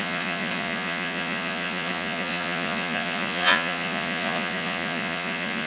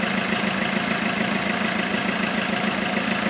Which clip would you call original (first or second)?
second